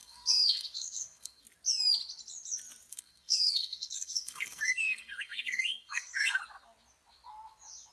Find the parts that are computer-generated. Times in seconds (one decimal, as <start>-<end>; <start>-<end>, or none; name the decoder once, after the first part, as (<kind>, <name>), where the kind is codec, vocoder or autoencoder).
0.0-1.4 (codec, SNAC); 2.9-6.4